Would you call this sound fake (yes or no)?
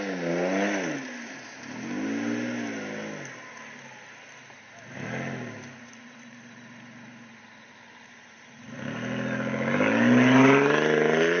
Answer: no